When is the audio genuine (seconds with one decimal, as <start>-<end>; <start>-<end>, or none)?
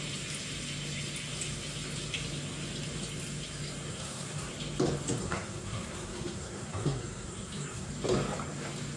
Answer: 0.0-3.9; 4.5-5.2; 7.9-9.0